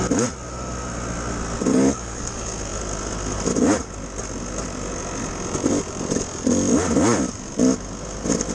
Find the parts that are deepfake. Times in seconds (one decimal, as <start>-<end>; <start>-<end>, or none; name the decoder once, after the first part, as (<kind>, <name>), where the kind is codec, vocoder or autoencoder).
1.7-2.2 (codec, DAC)